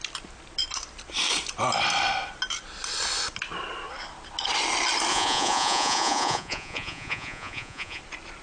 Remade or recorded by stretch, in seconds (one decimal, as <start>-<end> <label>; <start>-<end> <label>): 0.0-5.1 recorded; 5.1-8.0 remade; 8.0-8.4 recorded